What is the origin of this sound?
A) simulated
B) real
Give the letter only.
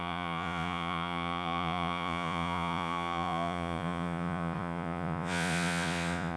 A